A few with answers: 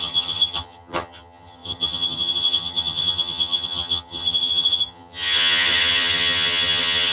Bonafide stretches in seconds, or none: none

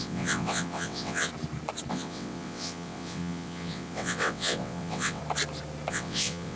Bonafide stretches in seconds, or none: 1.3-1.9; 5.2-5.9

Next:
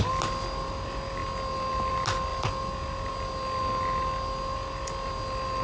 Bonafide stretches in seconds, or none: 0.0-5.6

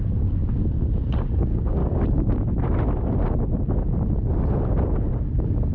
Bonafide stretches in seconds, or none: 0.4-1.2; 1.8-5.2

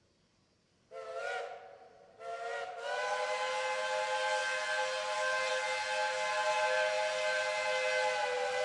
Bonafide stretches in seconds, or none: 0.0-8.6

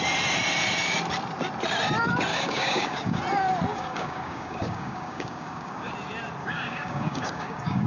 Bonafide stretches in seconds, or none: 0.0-2.3; 3.2-3.7; 5.9-6.4